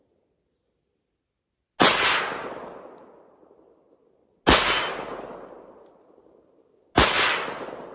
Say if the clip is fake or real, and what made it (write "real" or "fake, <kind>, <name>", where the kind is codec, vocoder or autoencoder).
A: real